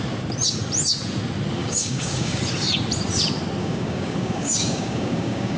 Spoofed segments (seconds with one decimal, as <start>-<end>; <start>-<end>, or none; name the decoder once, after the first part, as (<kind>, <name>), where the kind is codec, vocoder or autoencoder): 1.6-2.4 (codec, DAC); 3.6-5.6